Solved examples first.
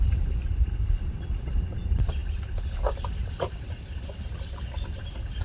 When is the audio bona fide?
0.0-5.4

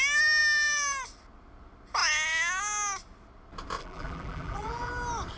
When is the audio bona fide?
0.0-3.8; 4.9-5.4